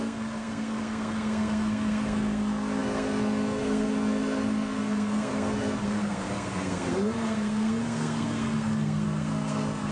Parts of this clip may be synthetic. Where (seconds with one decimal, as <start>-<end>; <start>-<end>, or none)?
0.0-9.9